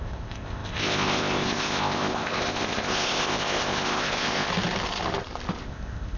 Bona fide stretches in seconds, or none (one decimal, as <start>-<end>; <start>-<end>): 4.5-5.6